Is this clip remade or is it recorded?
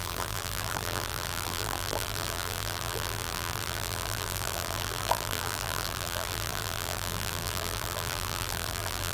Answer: remade